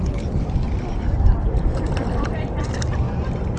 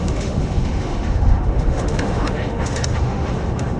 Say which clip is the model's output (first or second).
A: second